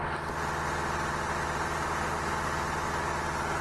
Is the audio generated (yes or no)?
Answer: no